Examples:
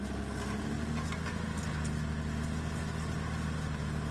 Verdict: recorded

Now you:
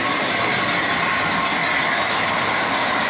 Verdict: recorded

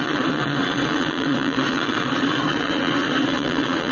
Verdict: remade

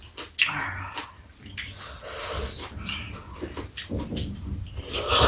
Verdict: recorded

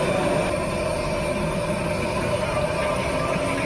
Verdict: recorded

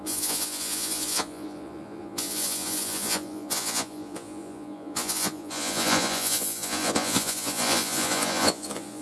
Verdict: remade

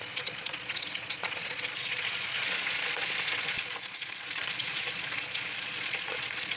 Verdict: remade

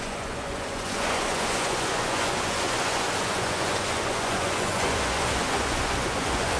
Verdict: remade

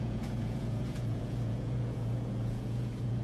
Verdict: remade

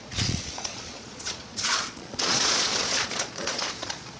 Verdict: remade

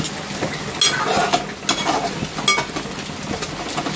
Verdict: recorded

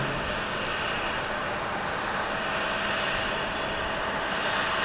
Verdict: recorded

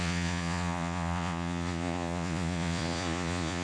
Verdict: remade